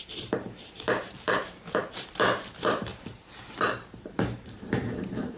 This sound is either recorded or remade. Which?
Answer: remade